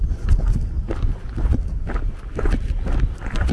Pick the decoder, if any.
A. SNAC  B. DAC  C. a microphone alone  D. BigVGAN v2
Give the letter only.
C